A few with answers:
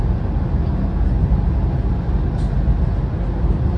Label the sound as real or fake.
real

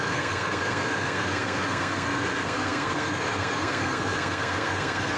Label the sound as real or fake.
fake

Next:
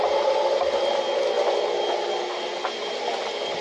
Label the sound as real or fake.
real